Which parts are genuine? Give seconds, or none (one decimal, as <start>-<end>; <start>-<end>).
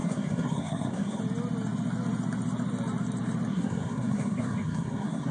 1.2-3.5